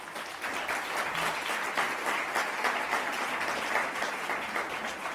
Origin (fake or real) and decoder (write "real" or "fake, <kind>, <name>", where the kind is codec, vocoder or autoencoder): real